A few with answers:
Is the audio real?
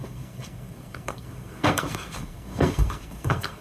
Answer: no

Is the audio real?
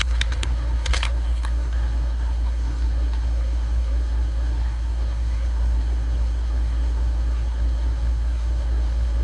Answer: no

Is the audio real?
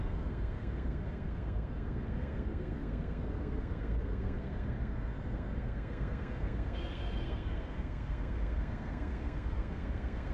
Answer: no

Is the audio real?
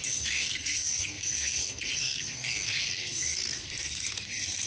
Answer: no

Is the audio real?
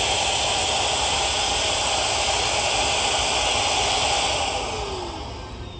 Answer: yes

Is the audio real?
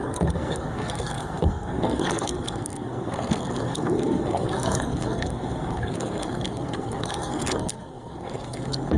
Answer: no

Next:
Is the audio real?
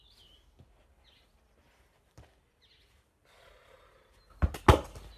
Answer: yes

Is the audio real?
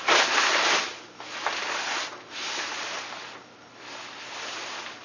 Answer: yes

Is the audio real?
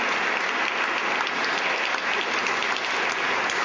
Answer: yes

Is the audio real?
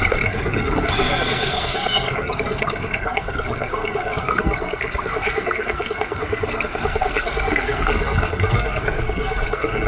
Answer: no